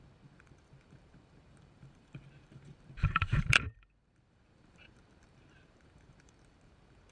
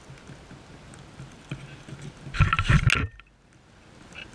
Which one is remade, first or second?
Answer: first